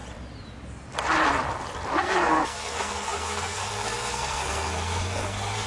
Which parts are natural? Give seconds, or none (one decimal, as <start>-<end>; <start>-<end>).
0.0-1.9